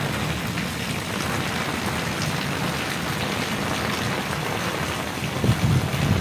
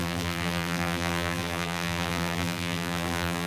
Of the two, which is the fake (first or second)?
second